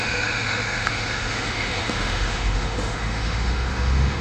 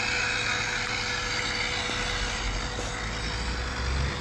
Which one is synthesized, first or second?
first